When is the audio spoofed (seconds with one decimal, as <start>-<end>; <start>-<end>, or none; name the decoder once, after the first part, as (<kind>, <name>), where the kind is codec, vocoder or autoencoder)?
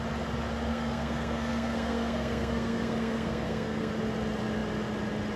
0.7-3.9 (codec, SNAC)